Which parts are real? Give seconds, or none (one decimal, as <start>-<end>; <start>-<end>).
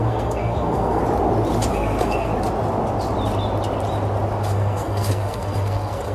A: 1.0-1.7; 2.3-4.4